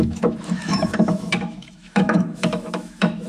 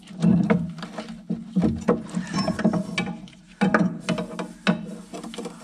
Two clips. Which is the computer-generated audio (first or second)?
first